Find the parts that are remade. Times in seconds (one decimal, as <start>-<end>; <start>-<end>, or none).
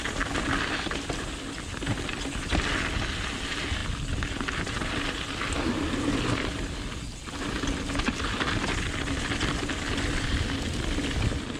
none